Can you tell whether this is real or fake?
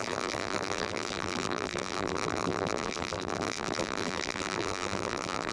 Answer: fake